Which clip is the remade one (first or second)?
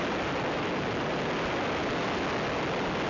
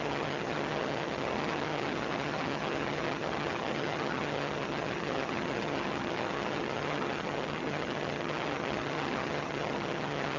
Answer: second